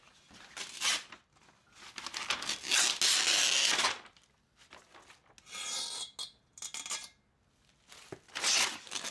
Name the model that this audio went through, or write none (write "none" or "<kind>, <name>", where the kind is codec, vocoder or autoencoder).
none